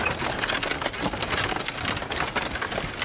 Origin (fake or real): real